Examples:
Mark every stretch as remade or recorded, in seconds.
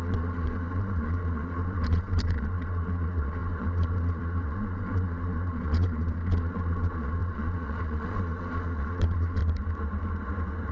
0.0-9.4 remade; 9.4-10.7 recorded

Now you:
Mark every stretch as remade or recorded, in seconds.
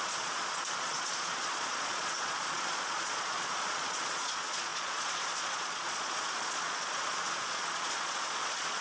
0.0-8.8 remade